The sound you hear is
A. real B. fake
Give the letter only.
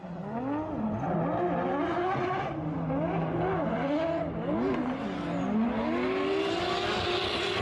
A